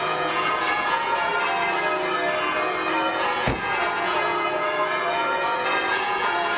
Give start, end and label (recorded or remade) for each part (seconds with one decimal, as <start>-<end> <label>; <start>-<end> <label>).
0.0-1.3 remade; 1.3-3.1 recorded; 3.1-6.6 remade